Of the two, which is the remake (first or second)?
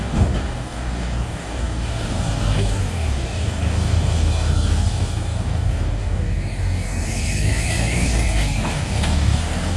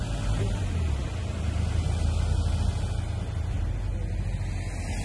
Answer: first